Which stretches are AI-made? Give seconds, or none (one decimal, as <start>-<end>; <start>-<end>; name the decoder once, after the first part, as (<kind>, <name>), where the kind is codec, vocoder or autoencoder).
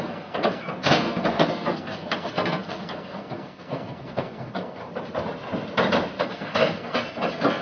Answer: 0.0-4.8 (codec, SNAC); 6.2-7.6